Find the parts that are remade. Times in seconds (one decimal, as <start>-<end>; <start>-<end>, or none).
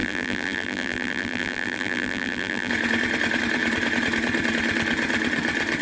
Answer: 0.0-2.7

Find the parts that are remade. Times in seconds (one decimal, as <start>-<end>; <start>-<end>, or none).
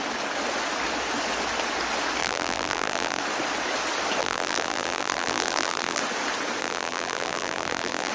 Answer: 2.2-3.2; 4.2-6.0; 6.6-8.1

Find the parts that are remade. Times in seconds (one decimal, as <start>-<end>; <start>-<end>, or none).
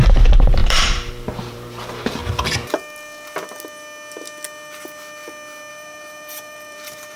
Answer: 0.0-2.2; 5.7-7.2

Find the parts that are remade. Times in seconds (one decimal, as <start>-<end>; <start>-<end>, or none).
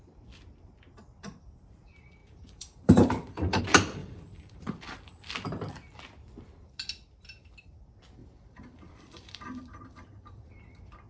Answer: 2.2-3.6; 4.0-4.8; 8.2-10.5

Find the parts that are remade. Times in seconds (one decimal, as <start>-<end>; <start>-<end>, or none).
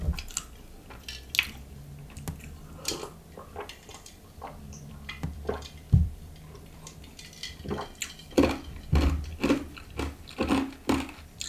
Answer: 3.9-7.3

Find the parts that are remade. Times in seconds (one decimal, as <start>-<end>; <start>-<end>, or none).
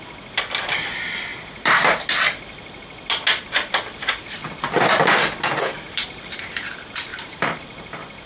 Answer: 1.3-2.0; 7.1-7.6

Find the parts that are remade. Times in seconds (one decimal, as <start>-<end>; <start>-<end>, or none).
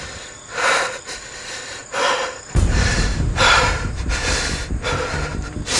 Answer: 0.0-5.8